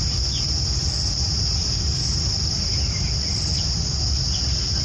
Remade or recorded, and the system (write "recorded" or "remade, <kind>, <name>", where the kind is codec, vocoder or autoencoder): recorded